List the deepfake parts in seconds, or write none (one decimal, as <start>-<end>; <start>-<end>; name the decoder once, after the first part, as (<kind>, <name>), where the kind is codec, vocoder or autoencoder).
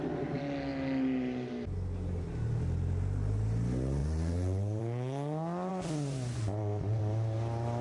4.0-4.8 (vocoder, Vocos); 5.7-7.0